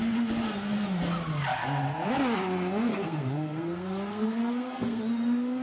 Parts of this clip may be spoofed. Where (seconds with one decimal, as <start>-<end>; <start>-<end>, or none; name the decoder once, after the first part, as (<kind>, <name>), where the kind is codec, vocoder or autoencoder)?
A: 2.9-5.0 (codec, SNAC)